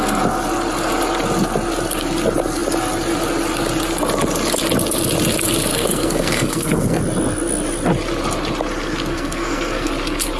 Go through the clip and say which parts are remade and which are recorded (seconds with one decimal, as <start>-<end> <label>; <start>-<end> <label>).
0.0-5.7 recorded; 5.7-7.0 remade; 7.0-9.1 recorded; 9.1-9.9 remade; 9.9-10.4 recorded